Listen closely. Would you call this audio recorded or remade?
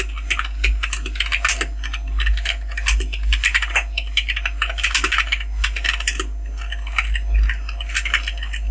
recorded